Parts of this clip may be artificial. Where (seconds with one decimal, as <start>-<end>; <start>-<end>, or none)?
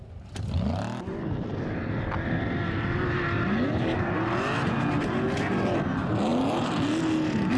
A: none